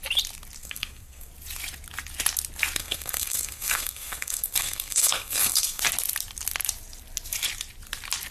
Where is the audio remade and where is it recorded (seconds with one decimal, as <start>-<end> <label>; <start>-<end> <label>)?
0.0-0.6 recorded; 0.6-1.3 remade; 1.3-2.8 recorded; 2.8-5.8 remade; 5.8-8.3 recorded